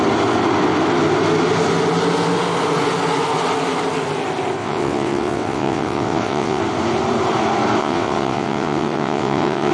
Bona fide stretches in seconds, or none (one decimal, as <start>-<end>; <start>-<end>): 0.0-4.6; 6.6-7.8